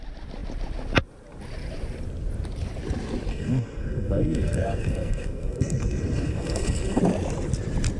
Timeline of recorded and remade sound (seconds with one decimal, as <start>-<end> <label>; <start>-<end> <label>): 0.0-3.3 recorded; 3.3-7.0 remade; 7.0-8.0 recorded